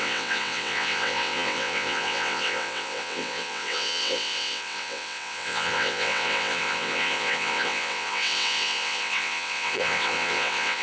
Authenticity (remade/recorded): remade